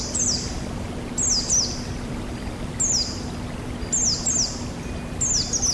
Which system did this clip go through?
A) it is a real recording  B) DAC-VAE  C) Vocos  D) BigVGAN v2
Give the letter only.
A